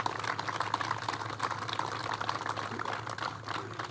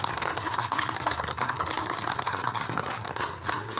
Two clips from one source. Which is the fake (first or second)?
second